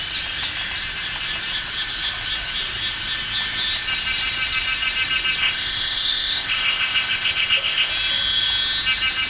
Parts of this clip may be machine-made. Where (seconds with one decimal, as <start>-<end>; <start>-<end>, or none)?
5.4-7.9